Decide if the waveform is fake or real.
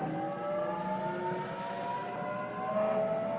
real